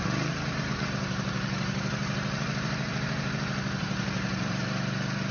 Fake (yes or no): yes